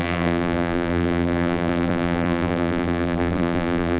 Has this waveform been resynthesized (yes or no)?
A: yes